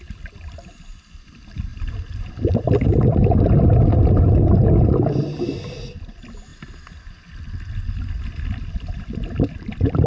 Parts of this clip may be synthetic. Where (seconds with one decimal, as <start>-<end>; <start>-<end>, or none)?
0.0-3.2; 5.4-6.5; 9.0-10.1